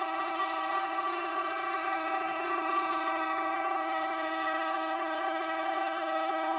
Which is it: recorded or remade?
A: remade